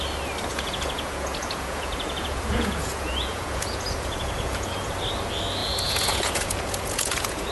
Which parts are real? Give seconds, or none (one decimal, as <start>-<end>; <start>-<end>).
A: 0.0-0.5; 4.9-5.6